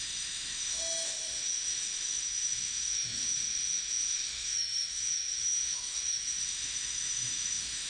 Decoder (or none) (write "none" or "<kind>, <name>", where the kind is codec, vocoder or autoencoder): autoencoder, DAC-VAE